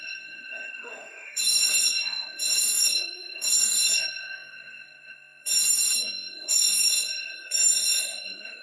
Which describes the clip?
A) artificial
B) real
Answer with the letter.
A